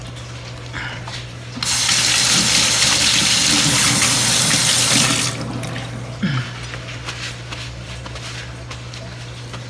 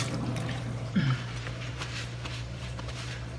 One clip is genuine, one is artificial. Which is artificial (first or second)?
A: second